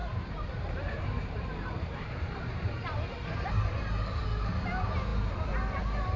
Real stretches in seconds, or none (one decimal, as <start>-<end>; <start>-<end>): 3.5-6.2